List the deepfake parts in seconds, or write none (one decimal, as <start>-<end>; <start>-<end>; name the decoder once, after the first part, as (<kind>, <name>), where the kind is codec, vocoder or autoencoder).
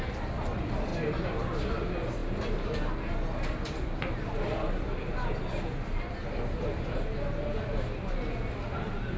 none